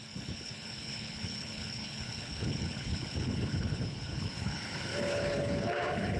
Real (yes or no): no